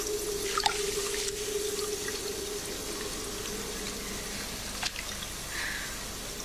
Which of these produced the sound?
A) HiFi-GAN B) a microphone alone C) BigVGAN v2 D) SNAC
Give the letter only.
B